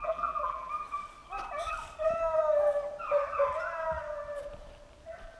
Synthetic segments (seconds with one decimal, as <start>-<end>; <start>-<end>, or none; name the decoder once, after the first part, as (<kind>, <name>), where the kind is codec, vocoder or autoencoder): 0.0-0.7 (vocoder, BigVGAN v2)